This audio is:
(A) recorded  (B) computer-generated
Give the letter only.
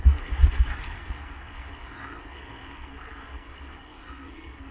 B